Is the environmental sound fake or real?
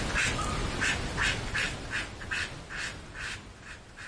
real